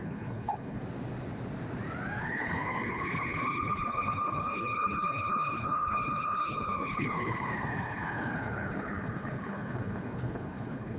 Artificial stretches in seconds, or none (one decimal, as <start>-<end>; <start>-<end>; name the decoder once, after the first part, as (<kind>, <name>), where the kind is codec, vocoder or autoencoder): 0.0-0.8 (codec, HILCodec); 2.2-11.0